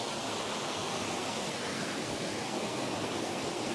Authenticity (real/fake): fake